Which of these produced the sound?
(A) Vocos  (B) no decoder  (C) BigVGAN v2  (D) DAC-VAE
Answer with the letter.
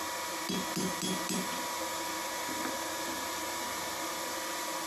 B